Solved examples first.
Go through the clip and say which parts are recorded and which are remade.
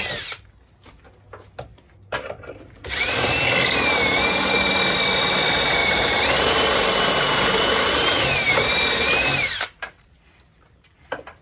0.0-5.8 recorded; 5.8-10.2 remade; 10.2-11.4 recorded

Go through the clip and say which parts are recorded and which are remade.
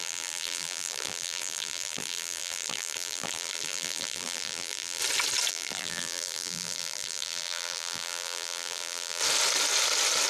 0.0-5.0 remade; 5.0-5.5 recorded; 5.5-9.2 remade; 9.2-10.3 recorded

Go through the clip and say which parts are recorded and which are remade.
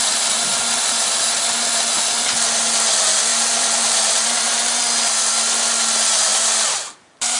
0.0-3.3 recorded; 3.3-4.8 remade; 4.8-6.3 recorded; 6.3-7.4 remade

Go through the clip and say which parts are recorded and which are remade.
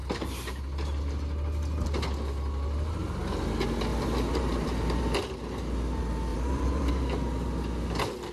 0.0-0.6 remade; 0.6-3.9 recorded; 3.9-5.0 remade; 5.0-6.3 recorded; 6.3-6.9 remade; 6.9-8.3 recorded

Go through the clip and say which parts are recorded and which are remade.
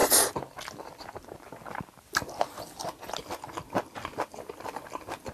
0.0-4.3 recorded; 4.3-5.3 remade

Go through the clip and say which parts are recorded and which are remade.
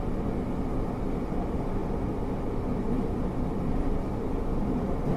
0.0-5.2 recorded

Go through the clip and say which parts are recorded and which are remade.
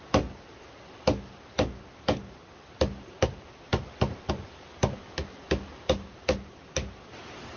0.0-3.7 recorded; 3.7-4.3 remade; 4.3-7.6 recorded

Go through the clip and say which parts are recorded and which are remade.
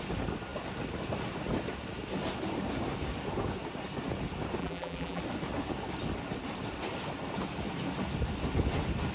0.0-4.6 recorded; 4.6-5.2 remade; 5.2-9.1 recorded